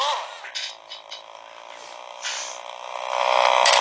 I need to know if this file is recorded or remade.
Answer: recorded